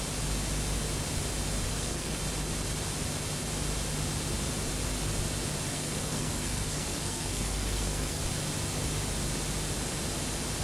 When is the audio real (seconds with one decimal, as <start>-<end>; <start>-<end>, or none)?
0.0-1.7; 2.2-5.7; 8.2-10.6